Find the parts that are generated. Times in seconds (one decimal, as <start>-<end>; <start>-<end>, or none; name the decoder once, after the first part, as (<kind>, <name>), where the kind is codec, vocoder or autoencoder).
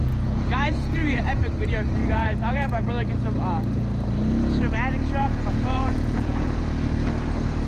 0.0-1.2 (vocoder, Vocos); 2.0-2.9; 5.2-6.6